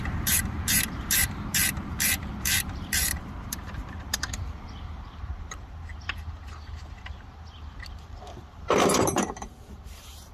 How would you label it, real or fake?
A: fake